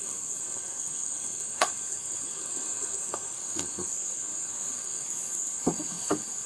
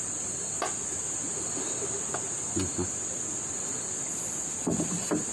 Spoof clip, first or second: first